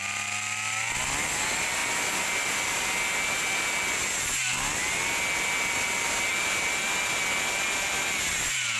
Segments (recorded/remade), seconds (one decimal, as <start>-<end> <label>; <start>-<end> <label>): 0.0-8.8 recorded